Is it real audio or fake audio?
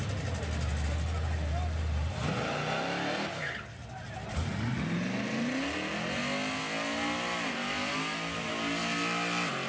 real